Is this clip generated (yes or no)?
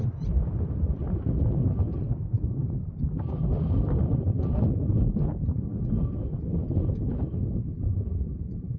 no